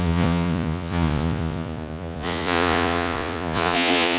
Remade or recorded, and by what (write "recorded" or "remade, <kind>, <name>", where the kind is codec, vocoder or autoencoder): remade, vocoder, Vocos